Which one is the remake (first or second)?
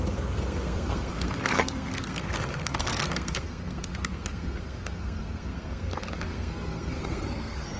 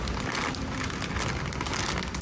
first